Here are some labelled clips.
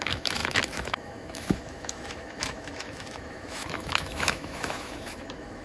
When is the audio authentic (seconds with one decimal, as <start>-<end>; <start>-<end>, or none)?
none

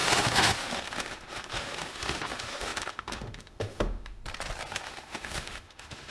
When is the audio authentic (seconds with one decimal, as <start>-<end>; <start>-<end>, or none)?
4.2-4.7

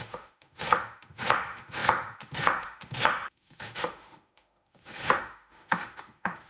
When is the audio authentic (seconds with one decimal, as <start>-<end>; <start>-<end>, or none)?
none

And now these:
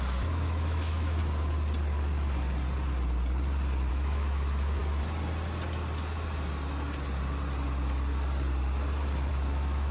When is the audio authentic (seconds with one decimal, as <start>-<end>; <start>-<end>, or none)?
1.2-3.9; 4.8-9.3